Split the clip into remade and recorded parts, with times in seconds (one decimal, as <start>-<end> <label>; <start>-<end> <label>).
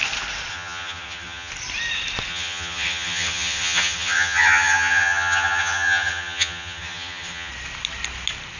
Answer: 0.0-0.5 recorded; 0.5-1.5 remade; 1.5-2.3 recorded; 2.3-7.5 remade; 7.5-8.6 recorded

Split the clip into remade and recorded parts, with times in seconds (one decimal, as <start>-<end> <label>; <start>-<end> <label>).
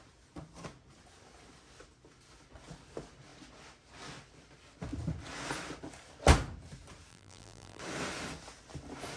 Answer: 0.0-7.1 recorded; 7.1-7.8 remade; 7.8-9.2 recorded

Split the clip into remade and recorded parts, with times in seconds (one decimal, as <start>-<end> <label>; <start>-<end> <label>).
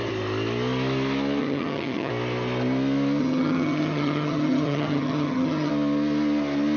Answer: 0.0-1.4 recorded; 1.4-2.1 remade; 2.1-3.2 recorded; 3.2-5.7 remade; 5.7-6.8 recorded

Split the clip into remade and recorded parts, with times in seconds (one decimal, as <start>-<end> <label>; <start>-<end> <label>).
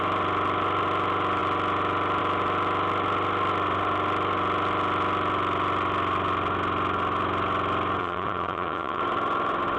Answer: 0.0-8.0 recorded; 8.0-9.0 remade; 9.0-9.8 recorded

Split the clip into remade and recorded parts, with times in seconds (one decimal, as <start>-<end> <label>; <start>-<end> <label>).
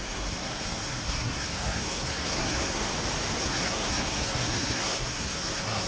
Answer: 0.0-2.9 remade; 2.9-3.4 recorded; 3.4-5.9 remade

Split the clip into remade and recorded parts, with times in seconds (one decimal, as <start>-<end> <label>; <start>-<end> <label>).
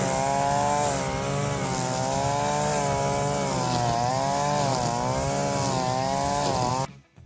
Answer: 0.0-7.3 recorded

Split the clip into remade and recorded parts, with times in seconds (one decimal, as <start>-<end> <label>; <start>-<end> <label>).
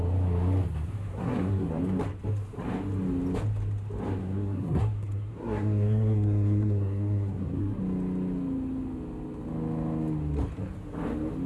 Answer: 0.0-1.1 recorded; 1.1-1.7 remade; 1.7-4.2 recorded; 4.2-7.8 remade; 7.8-11.5 recorded